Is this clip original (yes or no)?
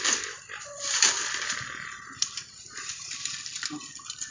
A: yes